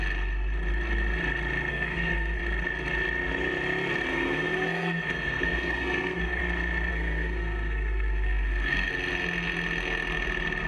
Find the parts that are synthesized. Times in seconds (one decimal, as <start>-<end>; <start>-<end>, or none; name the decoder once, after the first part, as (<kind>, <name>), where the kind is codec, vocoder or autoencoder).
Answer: 1.7-2.4 (codec, SNAC); 4.1-6.4; 6.9-8.9

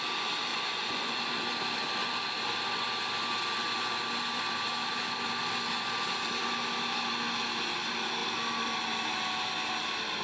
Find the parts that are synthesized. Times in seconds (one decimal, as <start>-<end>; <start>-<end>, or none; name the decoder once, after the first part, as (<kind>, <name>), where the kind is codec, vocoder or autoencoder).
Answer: 0.5-1.3 (vocoder, Vocos)

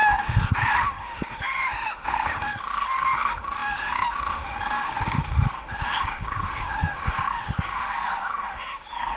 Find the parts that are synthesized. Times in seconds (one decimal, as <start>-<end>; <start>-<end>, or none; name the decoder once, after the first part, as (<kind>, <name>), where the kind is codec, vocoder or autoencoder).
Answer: 0.0-9.2 (autoencoder, DAC-VAE)

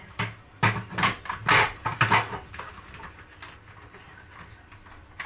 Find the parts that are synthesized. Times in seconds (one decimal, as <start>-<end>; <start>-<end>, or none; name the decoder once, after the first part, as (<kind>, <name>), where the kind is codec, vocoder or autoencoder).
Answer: none

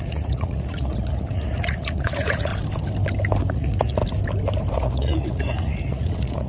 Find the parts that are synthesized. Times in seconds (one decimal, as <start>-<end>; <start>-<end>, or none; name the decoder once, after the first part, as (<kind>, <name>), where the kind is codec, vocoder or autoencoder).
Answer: 0.0-2.5 (vocoder, Vocos); 3.5-4.0; 4.7-6.5

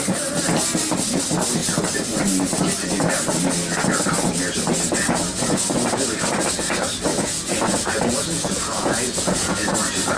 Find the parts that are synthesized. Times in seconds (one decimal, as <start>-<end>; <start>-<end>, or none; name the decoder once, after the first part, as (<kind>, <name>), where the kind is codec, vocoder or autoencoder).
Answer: 7.1-9.7 (vocoder, Vocos)